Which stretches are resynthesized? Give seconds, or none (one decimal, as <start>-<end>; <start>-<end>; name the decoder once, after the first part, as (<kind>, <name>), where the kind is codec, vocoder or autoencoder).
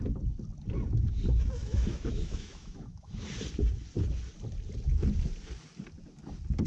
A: 1.6-3.2 (autoencoder, DAC-VAE)